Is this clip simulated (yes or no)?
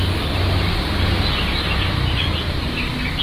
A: no